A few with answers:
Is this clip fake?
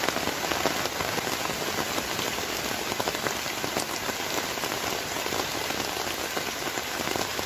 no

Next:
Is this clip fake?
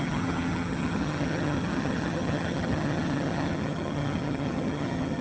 yes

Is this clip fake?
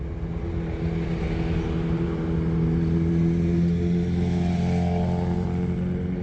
no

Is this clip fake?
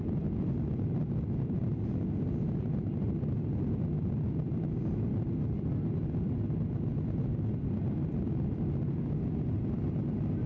no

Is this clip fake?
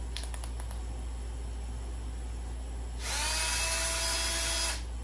no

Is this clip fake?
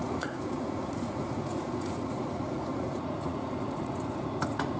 yes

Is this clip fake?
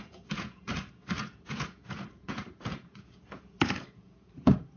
yes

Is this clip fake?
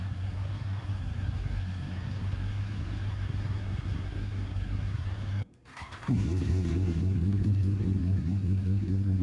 yes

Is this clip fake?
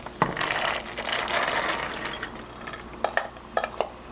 no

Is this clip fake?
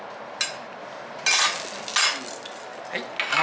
no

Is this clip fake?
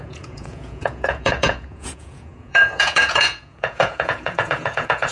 yes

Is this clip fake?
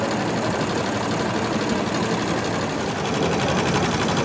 no